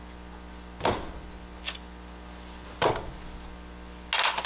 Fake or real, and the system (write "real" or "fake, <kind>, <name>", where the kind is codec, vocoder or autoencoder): real